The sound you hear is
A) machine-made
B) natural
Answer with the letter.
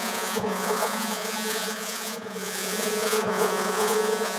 A